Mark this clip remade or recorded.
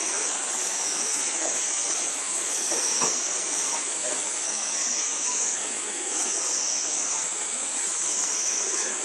remade